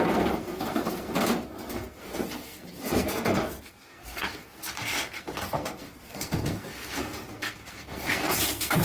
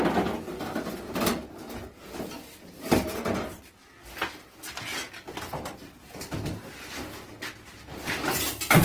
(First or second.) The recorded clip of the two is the second